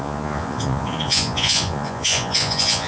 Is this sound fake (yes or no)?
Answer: yes